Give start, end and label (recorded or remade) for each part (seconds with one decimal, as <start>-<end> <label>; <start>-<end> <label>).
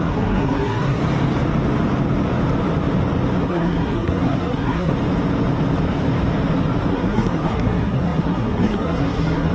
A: 0.0-1.0 remade; 1.0-3.4 recorded; 3.4-4.9 remade; 4.9-6.9 recorded; 6.9-9.5 remade